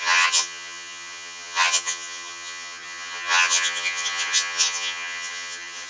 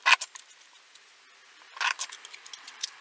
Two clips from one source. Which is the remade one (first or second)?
first